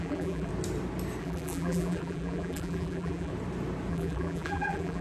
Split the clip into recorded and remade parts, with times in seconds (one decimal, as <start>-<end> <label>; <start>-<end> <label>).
0.0-0.5 remade; 0.5-1.2 recorded; 1.2-3.3 remade; 3.3-3.9 recorded; 3.9-5.0 remade